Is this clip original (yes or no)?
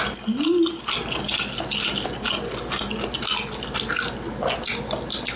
yes